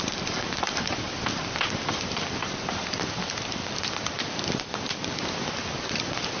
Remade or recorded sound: remade